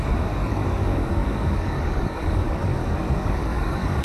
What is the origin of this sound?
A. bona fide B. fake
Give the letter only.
B